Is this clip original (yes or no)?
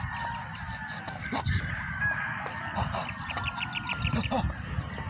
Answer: yes